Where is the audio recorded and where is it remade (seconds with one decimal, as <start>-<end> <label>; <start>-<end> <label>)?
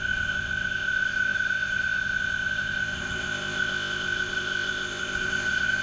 0.0-5.8 remade